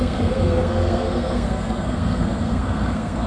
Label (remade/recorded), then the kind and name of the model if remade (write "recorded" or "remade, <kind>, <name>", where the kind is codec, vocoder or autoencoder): remade, codec, SNAC